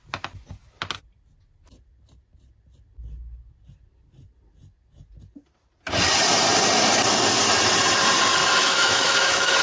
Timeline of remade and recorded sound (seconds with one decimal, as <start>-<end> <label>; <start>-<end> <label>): 0.0-8.4 recorded; 8.4-9.6 remade